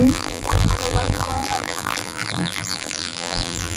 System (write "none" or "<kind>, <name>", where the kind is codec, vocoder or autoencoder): vocoder, BigVGAN v2